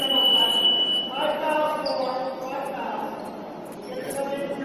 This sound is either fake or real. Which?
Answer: real